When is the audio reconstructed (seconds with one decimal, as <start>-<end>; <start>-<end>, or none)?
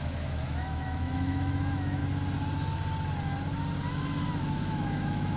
0.0-2.0; 4.4-5.4